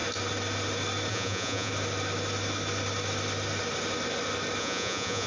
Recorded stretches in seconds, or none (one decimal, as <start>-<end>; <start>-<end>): 0.0-1.1; 1.7-4.6